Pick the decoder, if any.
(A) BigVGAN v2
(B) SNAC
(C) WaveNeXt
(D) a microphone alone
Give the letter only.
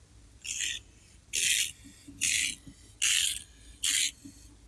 D